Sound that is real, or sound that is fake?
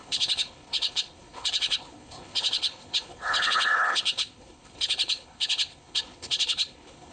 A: fake